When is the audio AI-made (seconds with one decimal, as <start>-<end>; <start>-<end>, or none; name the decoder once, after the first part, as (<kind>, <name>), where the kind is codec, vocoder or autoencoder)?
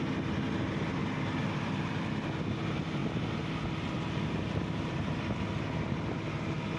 none